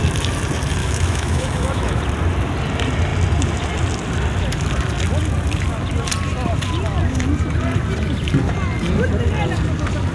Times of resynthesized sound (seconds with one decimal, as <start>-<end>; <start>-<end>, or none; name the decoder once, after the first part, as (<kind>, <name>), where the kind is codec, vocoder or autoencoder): 0.8-2.0 (autoencoder, DAC-VAE)